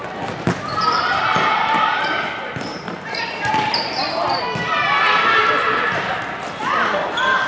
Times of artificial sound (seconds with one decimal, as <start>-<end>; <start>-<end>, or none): 0.7-2.3; 2.7-4.4